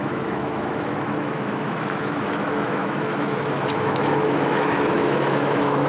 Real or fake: fake